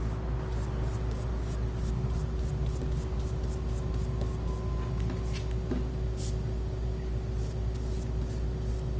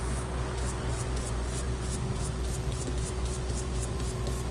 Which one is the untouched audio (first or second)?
first